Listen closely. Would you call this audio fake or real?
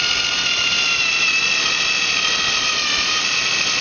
real